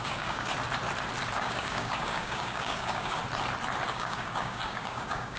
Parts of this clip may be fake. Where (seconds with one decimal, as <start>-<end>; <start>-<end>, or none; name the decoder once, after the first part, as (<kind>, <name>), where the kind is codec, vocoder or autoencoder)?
0.0-0.5 (codec, DAC); 1.4-3.2; 3.9-5.4